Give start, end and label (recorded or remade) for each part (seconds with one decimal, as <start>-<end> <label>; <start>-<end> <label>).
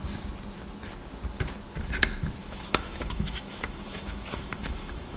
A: 0.0-2.4 recorded; 2.4-5.2 remade